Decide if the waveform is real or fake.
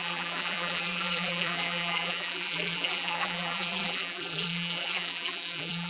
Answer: fake